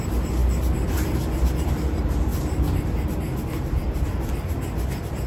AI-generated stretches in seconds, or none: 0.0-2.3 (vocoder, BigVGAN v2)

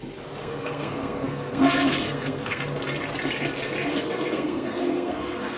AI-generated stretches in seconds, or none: 0.4-2.6 (codec, SNAC); 3.9-5.6